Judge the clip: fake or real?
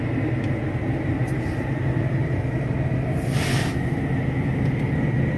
real